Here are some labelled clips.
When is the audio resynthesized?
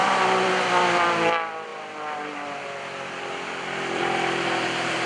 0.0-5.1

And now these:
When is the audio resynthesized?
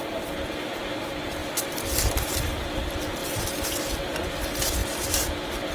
1.4-2.4; 3.2-3.9